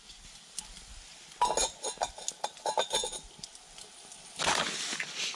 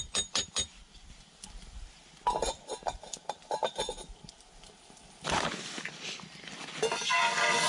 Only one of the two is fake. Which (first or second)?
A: second